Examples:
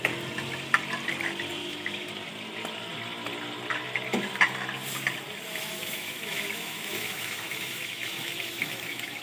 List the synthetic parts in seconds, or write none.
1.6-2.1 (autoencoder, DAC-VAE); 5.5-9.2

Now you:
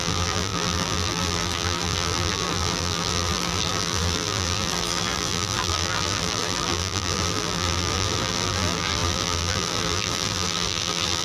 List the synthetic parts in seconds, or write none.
0.0-11.2 (vocoder, BigVGAN v2)